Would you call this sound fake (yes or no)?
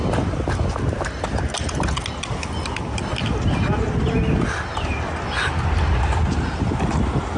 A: no